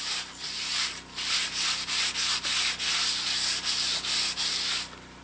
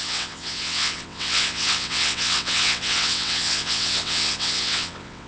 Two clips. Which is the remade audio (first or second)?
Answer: second